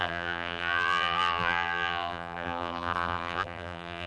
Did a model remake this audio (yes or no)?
yes